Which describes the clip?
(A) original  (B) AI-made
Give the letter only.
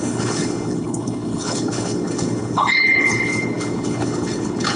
B